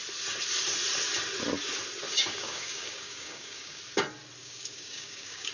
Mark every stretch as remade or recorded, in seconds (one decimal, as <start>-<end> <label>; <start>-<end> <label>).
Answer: 0.0-2.1 recorded; 2.1-3.8 remade; 3.8-4.4 recorded; 4.4-5.5 remade